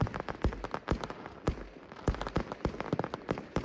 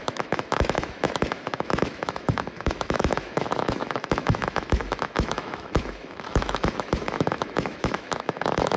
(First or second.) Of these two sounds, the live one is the first